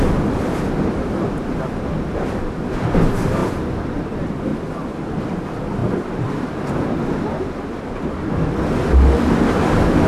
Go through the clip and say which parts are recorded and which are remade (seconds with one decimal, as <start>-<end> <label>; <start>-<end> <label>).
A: 0.0-5.8 recorded; 5.8-6.5 remade; 6.5-10.1 recorded